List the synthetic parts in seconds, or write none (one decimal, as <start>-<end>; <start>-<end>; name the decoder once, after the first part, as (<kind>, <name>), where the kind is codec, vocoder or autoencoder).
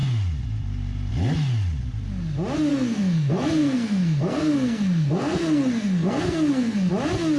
2.7-6.9 (codec, SNAC)